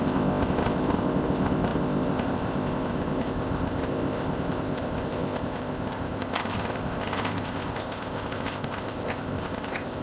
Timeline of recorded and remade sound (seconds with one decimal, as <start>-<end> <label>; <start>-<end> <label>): 0.0-10.0 remade